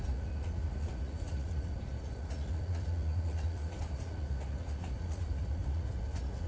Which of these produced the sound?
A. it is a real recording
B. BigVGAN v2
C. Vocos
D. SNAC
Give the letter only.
C